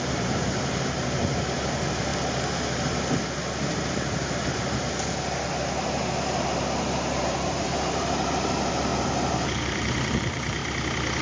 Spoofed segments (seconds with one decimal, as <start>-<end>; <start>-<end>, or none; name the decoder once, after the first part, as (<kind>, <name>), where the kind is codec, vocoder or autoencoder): 0.0-2.1 (vocoder, BigVGAN v2); 7.2-8.9; 9.6-10.6